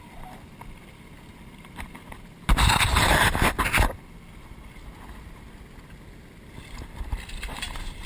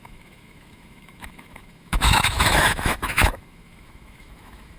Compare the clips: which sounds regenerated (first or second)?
second